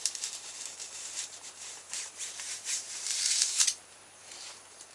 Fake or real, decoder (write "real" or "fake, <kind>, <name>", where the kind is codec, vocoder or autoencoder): fake, vocoder, BigVGAN v2